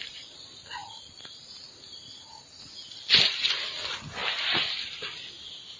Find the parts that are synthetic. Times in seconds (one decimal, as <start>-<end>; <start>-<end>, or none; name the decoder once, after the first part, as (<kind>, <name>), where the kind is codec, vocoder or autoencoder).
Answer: none

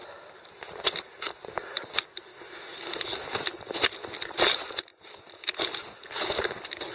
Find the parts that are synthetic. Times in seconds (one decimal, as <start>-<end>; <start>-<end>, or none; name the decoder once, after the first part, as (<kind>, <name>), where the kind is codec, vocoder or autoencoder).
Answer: none

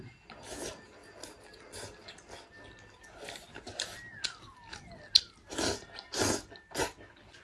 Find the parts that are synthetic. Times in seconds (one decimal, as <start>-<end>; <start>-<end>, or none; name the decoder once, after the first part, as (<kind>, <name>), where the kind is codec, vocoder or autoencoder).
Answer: none

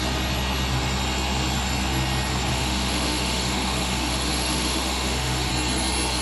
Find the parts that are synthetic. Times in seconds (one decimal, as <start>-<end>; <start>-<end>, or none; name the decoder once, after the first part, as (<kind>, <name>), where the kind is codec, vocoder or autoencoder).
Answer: 2.5-5.5 (autoencoder, DAC-VAE)

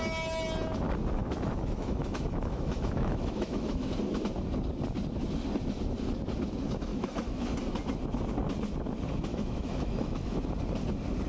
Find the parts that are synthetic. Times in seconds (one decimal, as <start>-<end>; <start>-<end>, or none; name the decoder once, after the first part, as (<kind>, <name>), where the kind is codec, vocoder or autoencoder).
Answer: 1.2-3.9 (autoencoder, DAC-VAE); 6.9-7.6; 9.3-10.4

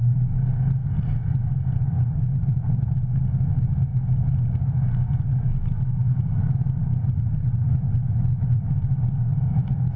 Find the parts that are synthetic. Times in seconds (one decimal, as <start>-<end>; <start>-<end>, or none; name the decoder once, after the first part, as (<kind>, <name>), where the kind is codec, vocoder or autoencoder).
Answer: none